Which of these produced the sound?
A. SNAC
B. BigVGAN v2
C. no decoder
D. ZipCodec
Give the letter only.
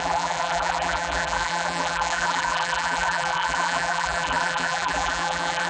B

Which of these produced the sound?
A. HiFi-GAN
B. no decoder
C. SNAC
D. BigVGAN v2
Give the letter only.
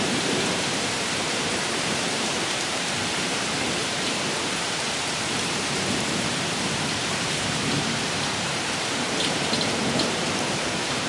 D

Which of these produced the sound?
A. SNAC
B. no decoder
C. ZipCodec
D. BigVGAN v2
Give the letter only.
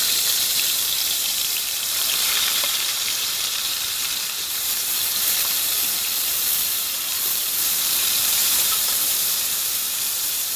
D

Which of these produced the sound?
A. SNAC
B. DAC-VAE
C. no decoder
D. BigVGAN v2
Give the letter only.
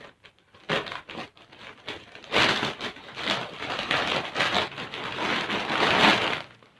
C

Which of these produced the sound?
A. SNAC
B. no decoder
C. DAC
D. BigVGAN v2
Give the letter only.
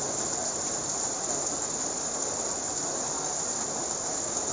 D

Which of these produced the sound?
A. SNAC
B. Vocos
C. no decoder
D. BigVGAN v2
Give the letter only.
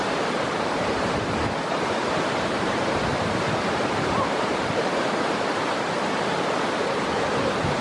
D